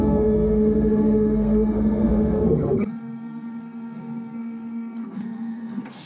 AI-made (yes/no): yes